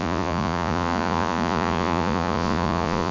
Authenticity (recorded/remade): remade